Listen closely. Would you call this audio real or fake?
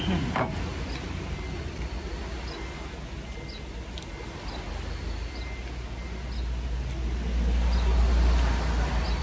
real